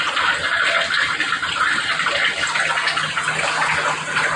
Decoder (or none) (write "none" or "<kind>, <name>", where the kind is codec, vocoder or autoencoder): none